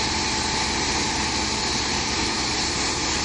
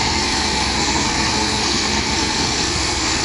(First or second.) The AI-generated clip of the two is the second